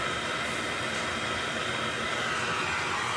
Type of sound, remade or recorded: recorded